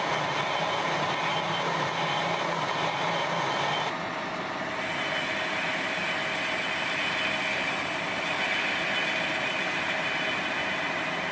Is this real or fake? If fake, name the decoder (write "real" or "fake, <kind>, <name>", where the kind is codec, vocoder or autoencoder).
real